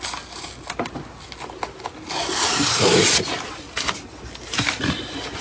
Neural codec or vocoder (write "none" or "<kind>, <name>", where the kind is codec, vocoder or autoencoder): none